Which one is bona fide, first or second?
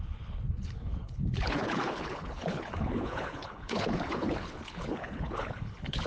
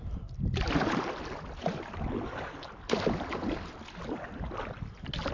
second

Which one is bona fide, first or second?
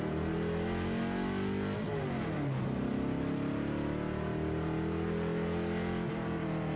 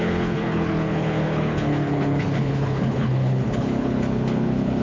first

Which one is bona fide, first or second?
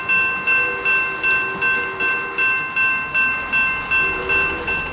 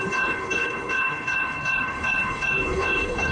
first